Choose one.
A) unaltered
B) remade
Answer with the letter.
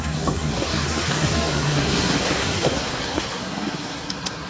B